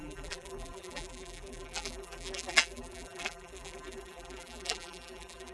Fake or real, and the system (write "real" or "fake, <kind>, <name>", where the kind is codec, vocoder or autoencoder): fake, vocoder, BigVGAN v2